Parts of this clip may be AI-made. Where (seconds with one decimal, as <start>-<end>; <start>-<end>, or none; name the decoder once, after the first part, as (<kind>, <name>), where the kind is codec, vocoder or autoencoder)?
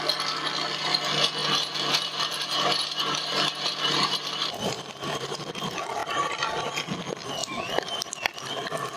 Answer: 1.4-5.6 (vocoder, BigVGAN v2); 7.4-8.0